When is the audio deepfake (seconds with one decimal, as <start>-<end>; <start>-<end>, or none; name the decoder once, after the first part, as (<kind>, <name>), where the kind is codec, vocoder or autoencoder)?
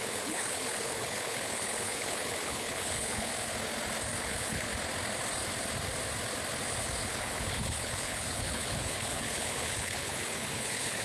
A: 0.0-3.3 (codec, HILCodec); 4.2-4.7; 7.0-11.0